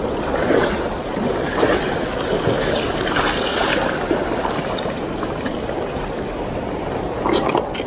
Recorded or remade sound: recorded